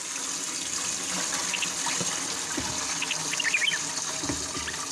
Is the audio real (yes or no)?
yes